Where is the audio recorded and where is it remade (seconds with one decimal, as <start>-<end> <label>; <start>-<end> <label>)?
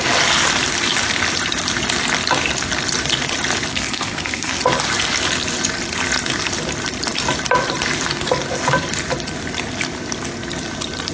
0.0-3.7 recorded; 3.7-4.6 remade; 4.6-11.1 recorded